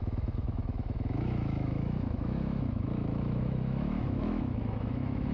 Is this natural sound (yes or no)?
no